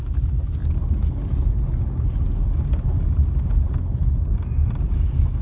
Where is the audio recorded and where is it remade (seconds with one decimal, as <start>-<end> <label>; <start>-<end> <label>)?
0.0-5.4 recorded